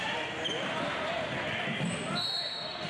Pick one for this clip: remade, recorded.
recorded